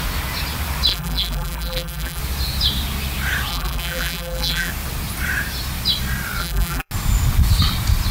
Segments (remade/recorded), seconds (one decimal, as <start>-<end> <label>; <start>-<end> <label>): 0.0-0.9 recorded; 0.9-2.2 remade; 2.2-3.5 recorded; 3.5-4.7 remade; 4.7-6.4 recorded; 6.4-6.9 remade; 6.9-8.1 recorded